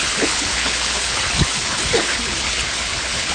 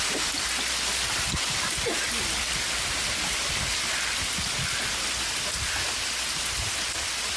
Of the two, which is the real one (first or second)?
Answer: second